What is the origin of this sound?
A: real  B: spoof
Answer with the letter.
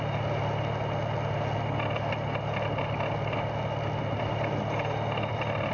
A